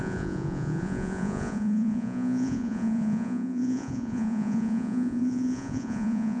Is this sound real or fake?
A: fake